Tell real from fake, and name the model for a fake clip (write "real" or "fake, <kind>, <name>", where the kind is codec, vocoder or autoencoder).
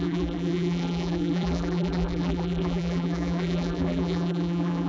fake, vocoder, BigVGAN v2